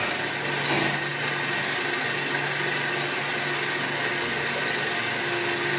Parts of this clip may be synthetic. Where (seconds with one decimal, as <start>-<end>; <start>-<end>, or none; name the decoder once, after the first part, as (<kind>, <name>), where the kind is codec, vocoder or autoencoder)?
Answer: none